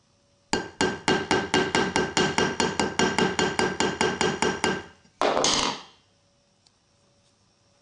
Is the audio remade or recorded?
recorded